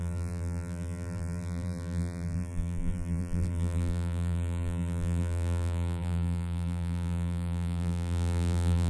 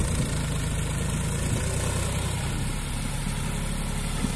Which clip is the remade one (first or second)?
first